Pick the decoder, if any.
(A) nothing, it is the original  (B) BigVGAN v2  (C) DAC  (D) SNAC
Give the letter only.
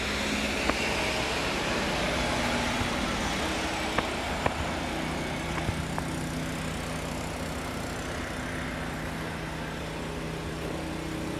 A